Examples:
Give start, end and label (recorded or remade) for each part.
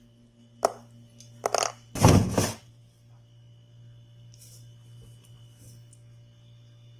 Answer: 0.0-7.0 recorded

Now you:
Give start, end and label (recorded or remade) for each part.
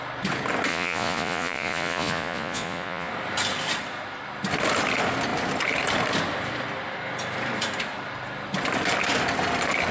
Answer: 0.0-0.7 recorded; 0.7-3.1 remade; 3.1-9.9 recorded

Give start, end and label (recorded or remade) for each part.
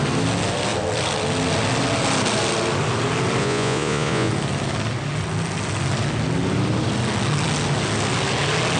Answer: 0.0-3.4 recorded; 3.4-4.3 remade; 4.3-8.8 recorded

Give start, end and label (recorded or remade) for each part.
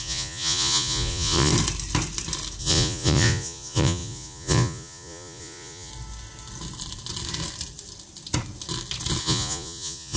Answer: 0.0-1.5 remade; 1.5-2.6 recorded; 2.6-5.9 remade; 5.9-9.2 recorded; 9.2-10.2 remade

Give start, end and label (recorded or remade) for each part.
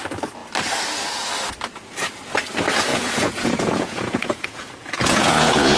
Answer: 0.0-2.9 recorded; 2.9-5.8 remade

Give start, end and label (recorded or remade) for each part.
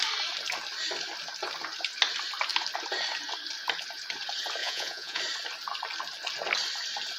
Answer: 0.0-4.6 recorded; 4.6-5.2 remade; 5.2-7.2 recorded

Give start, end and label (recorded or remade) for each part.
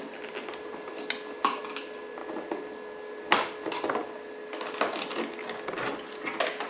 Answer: 0.0-6.7 recorded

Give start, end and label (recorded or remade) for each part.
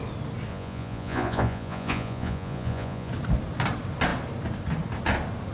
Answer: 0.0-0.5 recorded; 0.5-3.1 remade; 3.1-5.5 recorded